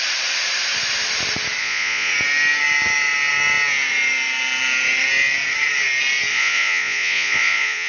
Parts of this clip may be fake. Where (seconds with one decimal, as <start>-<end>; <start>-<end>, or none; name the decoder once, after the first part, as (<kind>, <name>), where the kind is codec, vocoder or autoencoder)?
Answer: 1.6-2.1 (vocoder, Vocos); 6.3-7.9